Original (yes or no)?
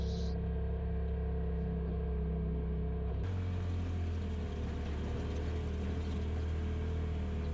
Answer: yes